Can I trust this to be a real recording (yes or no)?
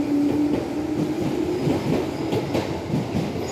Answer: yes